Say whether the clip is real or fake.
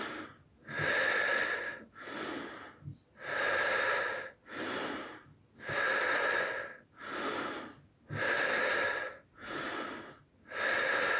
real